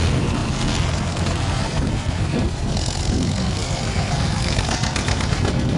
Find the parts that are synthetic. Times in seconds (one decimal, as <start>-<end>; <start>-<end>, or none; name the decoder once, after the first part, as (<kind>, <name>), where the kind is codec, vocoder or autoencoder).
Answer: 0.0-5.8 (codec, SNAC)